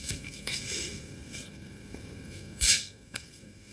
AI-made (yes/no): yes